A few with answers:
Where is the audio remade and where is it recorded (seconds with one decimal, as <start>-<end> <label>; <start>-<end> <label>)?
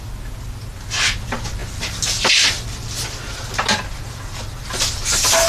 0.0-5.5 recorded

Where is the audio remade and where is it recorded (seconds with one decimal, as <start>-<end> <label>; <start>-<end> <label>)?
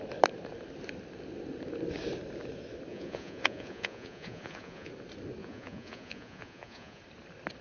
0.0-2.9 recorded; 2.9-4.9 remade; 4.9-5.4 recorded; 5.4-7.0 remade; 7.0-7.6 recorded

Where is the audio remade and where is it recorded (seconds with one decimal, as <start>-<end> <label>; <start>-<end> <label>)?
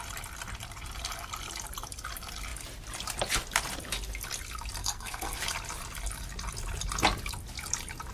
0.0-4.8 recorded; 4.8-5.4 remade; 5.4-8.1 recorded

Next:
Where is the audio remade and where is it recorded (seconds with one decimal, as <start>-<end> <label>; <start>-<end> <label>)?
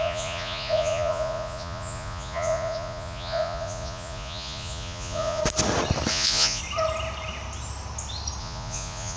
0.0-5.4 remade; 5.4-6.1 recorded; 6.1-6.6 remade; 6.6-8.4 recorded; 8.4-9.2 remade